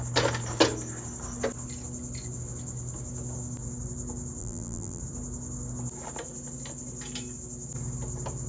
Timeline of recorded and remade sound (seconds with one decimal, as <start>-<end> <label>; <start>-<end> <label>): 0.0-4.4 recorded; 4.4-5.0 remade; 5.0-8.5 recorded